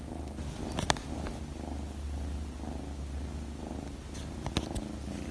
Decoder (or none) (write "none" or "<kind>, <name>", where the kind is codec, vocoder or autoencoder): none